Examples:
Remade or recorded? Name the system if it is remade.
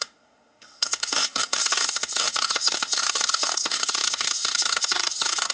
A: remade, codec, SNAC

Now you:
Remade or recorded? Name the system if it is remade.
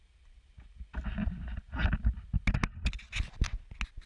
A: recorded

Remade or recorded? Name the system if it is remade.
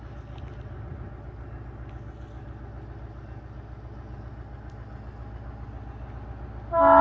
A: recorded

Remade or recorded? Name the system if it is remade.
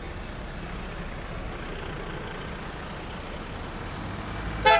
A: recorded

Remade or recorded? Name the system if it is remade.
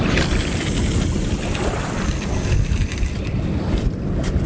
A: recorded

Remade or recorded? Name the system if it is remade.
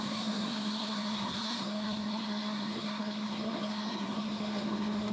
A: remade, codec, SNAC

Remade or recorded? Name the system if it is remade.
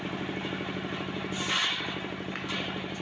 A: recorded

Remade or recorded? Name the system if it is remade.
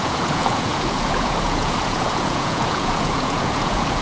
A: remade, vocoder, Vocos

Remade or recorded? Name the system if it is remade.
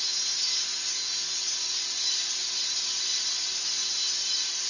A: recorded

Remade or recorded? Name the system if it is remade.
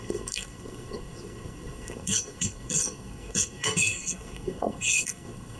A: remade, codec, SNAC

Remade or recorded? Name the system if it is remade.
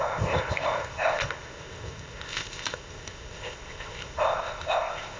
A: remade, codec, ZipCodec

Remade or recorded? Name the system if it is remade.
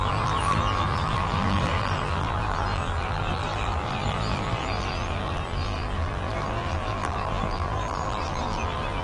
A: remade, vocoder, BigVGAN v2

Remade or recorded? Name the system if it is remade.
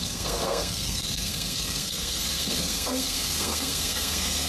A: remade, codec, SNAC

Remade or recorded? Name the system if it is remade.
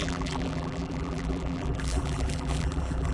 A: remade, vocoder, BigVGAN v2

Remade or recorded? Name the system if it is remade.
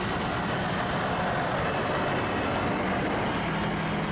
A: recorded